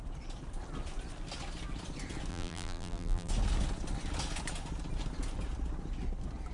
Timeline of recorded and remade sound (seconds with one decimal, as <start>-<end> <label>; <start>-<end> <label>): 0.0-2.3 recorded; 2.3-3.3 remade; 3.3-6.5 recorded